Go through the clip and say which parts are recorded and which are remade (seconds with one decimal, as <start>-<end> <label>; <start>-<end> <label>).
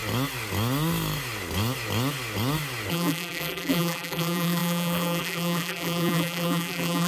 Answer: 0.0-2.9 recorded; 2.9-7.1 remade